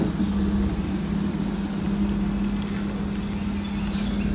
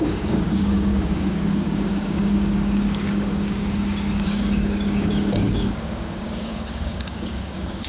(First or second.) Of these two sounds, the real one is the first